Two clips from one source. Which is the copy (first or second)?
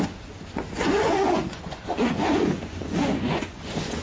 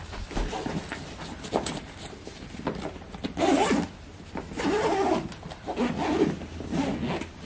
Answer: first